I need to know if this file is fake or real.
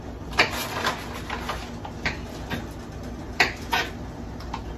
real